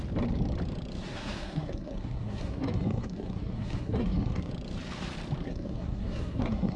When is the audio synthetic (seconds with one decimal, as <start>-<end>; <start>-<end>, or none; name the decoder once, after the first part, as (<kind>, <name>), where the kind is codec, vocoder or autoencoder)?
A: 1.0-4.5 (codec, SNAC); 5.4-6.8